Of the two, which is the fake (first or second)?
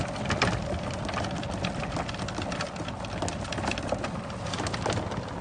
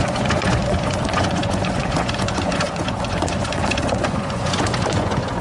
second